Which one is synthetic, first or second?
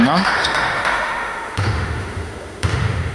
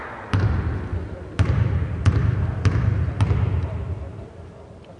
first